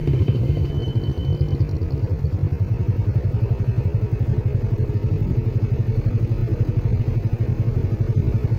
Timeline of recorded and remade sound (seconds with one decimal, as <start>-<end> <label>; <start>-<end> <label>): 0.0-0.7 remade; 0.7-8.6 recorded